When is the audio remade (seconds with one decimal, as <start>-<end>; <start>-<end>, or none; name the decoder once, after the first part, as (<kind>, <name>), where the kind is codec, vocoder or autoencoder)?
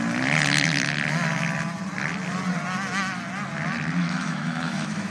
4.0-5.1 (autoencoder, DAC-VAE)